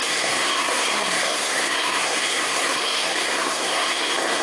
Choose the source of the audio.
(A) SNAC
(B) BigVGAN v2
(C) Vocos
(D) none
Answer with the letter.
A